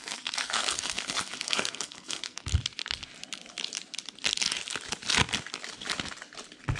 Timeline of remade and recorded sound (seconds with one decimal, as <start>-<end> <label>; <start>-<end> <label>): 0.0-2.5 remade; 2.5-6.8 recorded